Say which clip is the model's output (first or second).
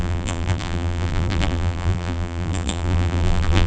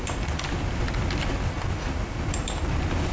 first